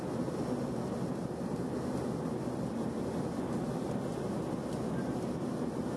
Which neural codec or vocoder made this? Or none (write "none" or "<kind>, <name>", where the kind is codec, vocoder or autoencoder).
none